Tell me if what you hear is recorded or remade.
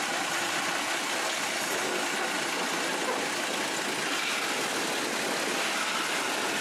recorded